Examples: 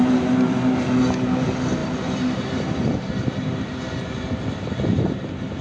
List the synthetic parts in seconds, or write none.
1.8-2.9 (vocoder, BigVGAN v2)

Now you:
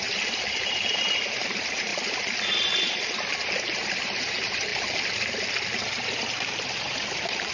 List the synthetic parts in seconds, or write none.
0.0-1.9 (vocoder, BigVGAN v2); 4.0-7.5

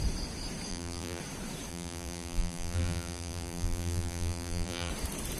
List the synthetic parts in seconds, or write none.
0.7-1.2 (vocoder, BigVGAN v2); 1.7-4.9

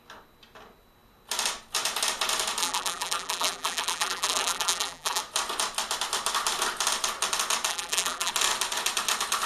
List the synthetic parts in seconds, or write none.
2.6-5.2 (vocoder, BigVGAN v2); 7.7-8.3

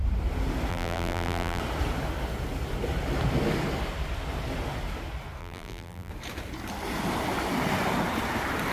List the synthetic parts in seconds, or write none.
0.7-1.6 (vocoder, BigVGAN v2); 5.4-6.1